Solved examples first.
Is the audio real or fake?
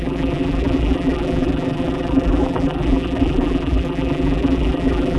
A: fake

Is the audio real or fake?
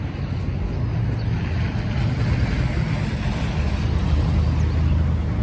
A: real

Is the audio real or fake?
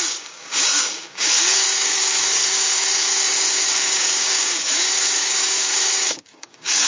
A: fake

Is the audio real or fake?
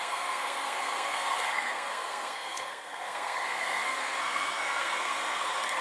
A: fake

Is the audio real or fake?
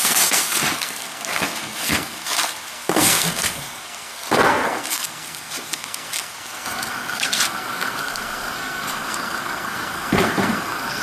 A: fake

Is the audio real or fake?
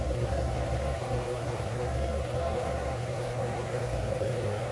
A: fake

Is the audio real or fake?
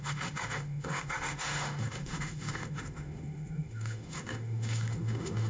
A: fake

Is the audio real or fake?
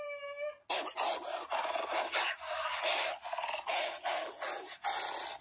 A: real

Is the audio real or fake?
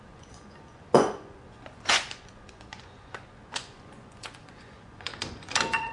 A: fake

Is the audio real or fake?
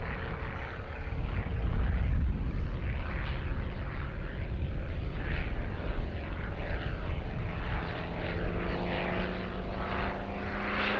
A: real